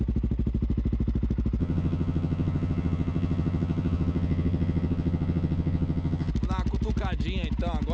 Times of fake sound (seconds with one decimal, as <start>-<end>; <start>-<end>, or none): 1.6-6.3